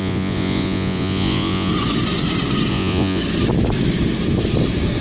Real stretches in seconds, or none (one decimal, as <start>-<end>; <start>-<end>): 1.7-2.7; 3.2-5.0